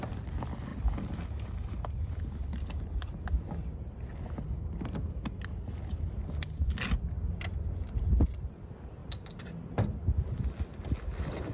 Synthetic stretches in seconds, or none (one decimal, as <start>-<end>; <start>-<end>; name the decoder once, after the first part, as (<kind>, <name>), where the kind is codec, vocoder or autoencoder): none